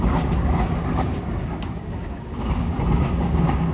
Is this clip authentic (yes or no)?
no